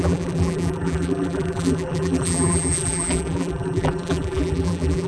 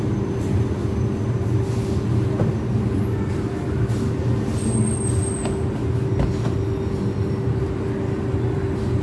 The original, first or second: second